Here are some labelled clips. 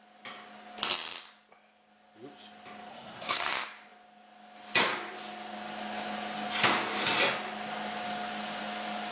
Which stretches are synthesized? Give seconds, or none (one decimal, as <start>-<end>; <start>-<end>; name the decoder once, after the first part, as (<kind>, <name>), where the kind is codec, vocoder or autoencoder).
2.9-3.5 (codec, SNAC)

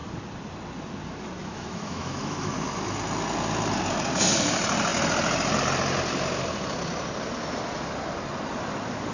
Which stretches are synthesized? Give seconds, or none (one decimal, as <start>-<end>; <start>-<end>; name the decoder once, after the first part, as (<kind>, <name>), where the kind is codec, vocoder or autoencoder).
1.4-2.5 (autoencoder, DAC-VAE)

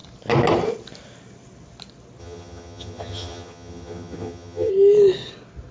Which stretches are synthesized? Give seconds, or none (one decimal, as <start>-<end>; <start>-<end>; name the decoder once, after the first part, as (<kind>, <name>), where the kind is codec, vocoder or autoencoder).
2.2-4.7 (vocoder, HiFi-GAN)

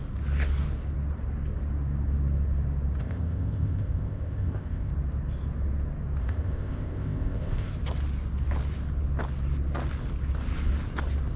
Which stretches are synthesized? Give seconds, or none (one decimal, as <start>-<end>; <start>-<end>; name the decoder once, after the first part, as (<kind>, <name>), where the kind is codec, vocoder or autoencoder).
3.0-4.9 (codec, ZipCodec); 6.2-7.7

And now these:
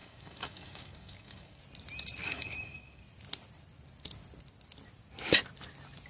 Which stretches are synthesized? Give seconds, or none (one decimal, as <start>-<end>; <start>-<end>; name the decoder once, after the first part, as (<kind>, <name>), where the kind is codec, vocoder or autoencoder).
0.0-1.6 (codec, DAC); 2.2-3.0

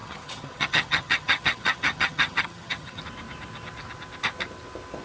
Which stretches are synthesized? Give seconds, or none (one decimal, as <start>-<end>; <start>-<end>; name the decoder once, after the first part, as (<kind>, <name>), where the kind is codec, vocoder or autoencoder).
0.0-3.0 (vocoder, HiFi-GAN)